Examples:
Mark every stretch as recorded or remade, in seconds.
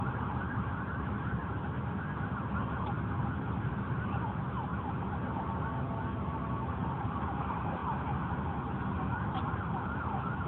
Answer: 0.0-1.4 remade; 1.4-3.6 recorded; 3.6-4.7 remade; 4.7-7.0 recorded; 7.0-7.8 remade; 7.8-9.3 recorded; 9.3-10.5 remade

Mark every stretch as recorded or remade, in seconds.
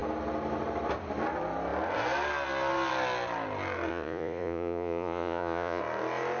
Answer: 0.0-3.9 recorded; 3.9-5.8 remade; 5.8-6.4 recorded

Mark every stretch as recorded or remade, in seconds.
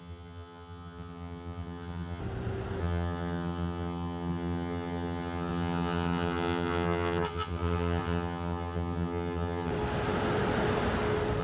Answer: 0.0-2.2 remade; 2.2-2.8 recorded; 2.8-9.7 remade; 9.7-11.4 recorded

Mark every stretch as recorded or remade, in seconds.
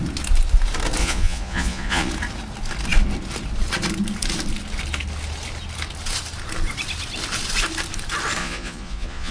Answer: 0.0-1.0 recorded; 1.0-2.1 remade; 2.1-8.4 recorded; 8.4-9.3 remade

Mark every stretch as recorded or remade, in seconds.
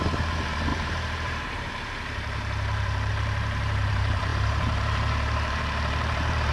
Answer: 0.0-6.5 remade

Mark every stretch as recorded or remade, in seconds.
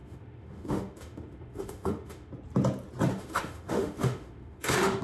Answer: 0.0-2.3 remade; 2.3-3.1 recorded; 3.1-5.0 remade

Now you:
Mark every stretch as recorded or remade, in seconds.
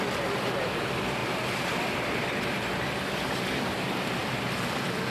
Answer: 0.0-4.2 remade; 4.2-5.1 recorded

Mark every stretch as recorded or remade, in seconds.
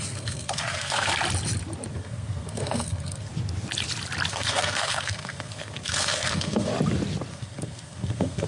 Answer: 0.0-1.1 remade; 1.1-1.9 recorded; 1.9-3.3 remade; 3.3-4.3 recorded; 4.3-6.7 remade; 6.7-7.3 recorded; 7.3-8.5 remade